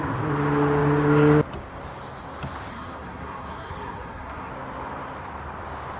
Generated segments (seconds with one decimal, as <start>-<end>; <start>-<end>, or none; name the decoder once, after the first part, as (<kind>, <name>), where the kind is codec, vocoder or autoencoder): 2.7-4.5 (codec, SNAC)